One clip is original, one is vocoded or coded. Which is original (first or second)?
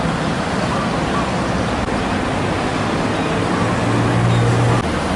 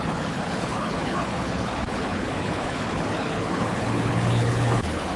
first